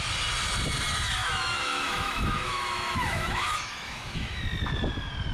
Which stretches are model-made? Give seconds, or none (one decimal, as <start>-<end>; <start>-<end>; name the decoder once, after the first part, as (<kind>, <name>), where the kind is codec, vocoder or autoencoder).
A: 1.2-4.4 (autoencoder, DAC-VAE)